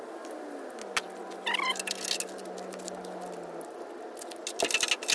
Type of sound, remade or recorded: recorded